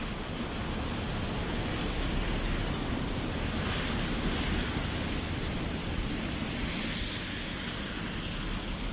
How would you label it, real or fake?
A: real